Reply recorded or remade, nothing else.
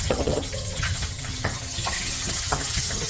remade